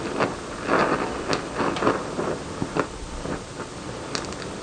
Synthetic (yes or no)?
no